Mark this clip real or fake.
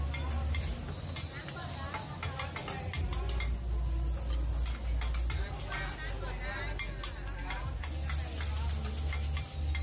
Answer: real